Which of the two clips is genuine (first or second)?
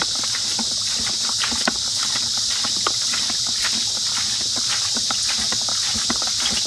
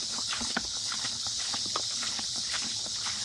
first